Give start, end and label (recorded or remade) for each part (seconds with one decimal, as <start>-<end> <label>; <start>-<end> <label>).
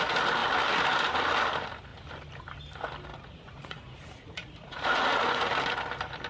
0.0-3.1 recorded; 3.1-5.4 remade; 5.4-6.3 recorded